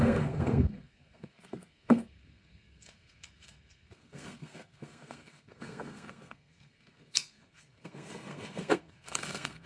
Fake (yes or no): yes